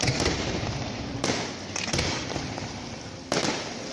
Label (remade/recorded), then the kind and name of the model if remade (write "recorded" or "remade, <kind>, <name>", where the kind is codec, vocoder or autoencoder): remade, vocoder, BigVGAN v2